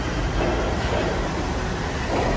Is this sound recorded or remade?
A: recorded